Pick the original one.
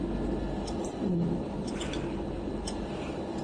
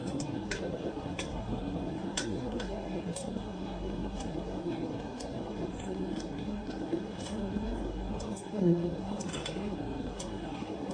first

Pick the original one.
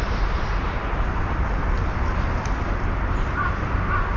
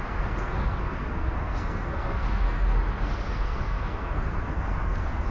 first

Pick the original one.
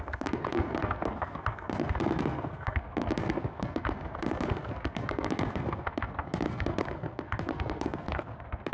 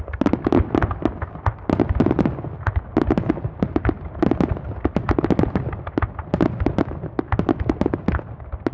second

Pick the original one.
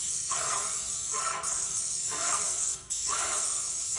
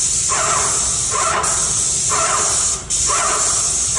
second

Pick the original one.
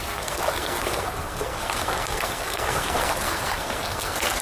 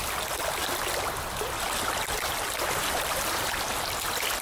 second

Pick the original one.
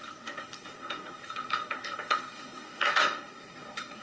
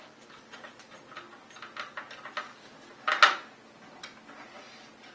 second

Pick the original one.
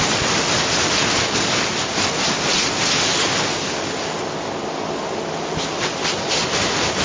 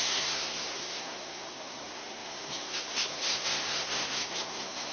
first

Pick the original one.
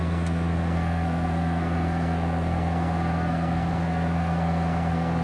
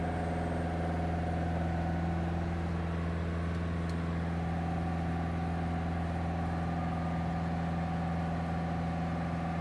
second